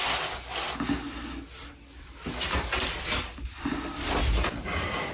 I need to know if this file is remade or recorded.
recorded